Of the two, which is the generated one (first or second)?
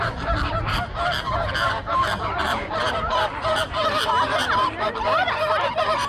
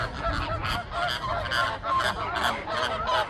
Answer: first